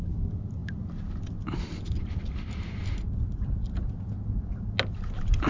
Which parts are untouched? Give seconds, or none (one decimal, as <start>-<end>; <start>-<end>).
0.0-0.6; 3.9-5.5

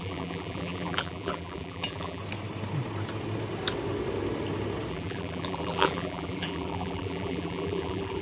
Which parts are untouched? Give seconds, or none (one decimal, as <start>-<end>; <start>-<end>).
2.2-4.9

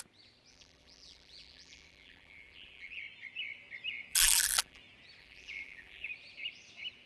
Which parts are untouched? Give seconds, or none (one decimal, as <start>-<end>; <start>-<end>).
0.0-0.5; 3.0-4.1; 4.8-5.2; 6.1-7.1

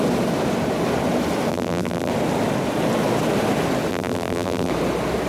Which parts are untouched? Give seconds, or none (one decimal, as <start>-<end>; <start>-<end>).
0.0-1.5; 2.1-3.9; 4.7-5.3

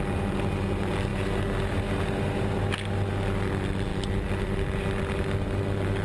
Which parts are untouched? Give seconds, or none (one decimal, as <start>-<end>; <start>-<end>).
0.0-6.0

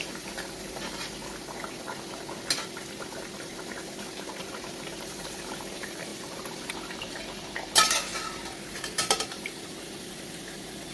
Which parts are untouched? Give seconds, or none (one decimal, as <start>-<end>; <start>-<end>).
1.2-5.0; 8.1-8.7